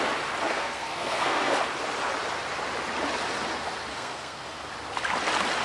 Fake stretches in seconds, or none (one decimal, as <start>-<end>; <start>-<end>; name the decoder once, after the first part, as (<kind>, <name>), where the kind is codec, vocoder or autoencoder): 0.5-1.5 (codec, SNAC); 3.9-4.7